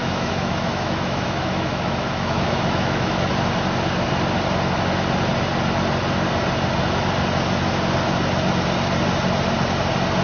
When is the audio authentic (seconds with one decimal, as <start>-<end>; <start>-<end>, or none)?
3.3-10.2